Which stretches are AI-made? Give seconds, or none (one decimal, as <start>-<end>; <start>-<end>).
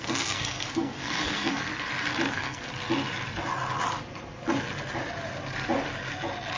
0.0-1.7; 2.3-2.7